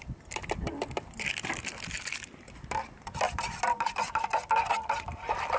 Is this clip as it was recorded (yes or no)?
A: yes